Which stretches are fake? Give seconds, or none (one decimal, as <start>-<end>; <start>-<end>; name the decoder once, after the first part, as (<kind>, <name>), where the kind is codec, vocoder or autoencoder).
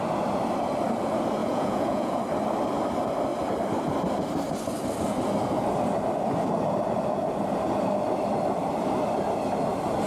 1.4-2.2 (vocoder, Vocos)